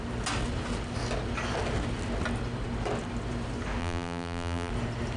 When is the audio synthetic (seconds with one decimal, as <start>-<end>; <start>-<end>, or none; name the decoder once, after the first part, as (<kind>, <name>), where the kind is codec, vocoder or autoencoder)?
3.8-4.7 (vocoder, BigVGAN v2)